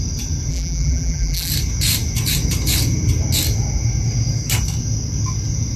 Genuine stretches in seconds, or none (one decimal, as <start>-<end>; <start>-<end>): 0.0-0.5; 1.5-5.8